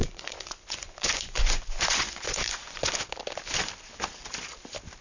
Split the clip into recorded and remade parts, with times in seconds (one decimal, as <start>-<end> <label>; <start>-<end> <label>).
0.0-3.0 remade; 3.0-5.0 recorded